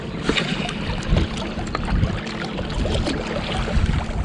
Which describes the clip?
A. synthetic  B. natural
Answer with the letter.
B